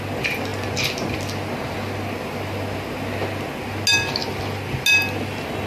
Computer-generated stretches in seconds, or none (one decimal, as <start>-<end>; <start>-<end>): none